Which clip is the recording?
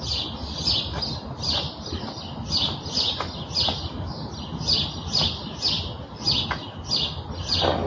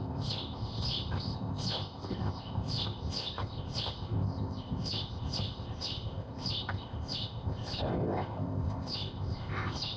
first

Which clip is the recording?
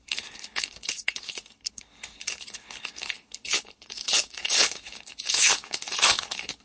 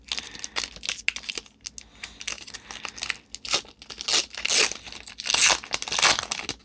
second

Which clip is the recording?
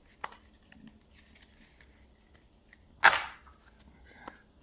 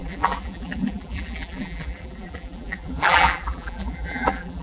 first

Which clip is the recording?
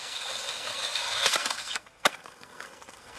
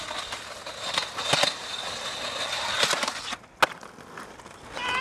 second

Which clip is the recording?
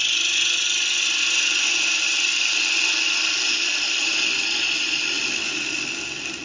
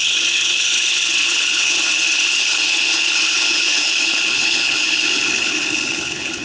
first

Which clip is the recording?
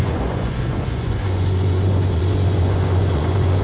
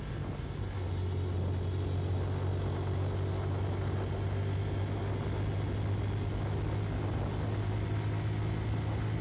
second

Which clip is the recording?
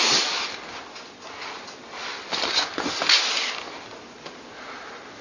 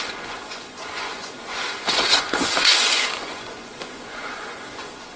first